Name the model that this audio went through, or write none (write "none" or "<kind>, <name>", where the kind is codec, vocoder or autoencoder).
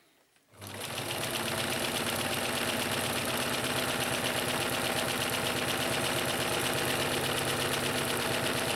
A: none